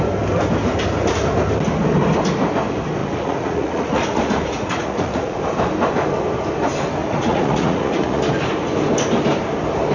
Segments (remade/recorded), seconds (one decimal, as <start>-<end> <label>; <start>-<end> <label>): 0.0-3.0 recorded; 3.0-5.4 remade; 5.4-7.0 recorded; 7.0-8.2 remade; 8.2-9.9 recorded